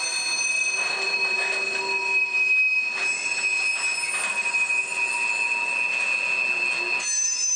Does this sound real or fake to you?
real